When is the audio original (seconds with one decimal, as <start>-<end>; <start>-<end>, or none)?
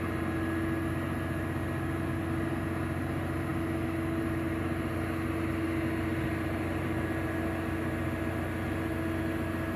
0.0-9.8